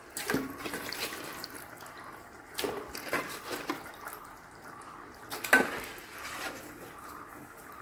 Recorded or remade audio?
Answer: recorded